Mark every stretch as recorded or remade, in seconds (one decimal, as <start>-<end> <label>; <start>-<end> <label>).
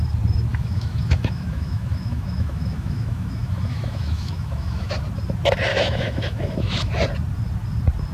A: 0.0-0.5 recorded; 0.5-4.9 remade; 4.9-5.7 recorded; 5.7-6.9 remade; 6.9-8.1 recorded